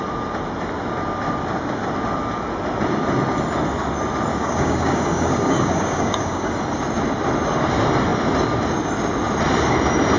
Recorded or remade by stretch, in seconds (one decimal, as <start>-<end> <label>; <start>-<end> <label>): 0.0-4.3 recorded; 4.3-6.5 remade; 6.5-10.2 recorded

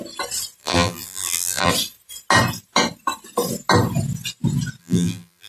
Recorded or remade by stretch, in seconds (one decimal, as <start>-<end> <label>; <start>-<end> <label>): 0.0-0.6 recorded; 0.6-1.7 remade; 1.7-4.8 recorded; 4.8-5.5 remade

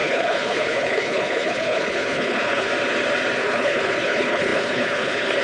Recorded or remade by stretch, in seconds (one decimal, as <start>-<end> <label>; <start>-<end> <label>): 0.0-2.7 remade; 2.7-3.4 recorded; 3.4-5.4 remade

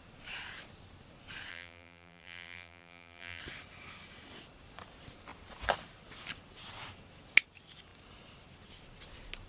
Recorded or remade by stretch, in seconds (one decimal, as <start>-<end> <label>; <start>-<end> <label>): 0.0-1.5 recorded; 1.5-3.4 remade; 3.4-9.5 recorded